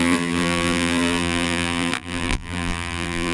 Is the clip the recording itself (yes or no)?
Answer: no